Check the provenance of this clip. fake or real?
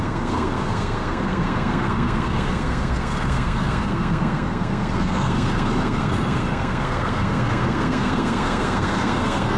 fake